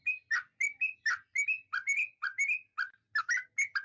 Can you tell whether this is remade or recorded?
recorded